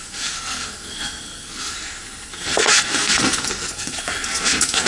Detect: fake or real fake